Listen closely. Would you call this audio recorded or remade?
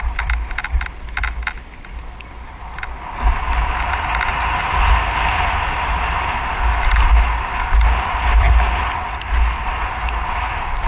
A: recorded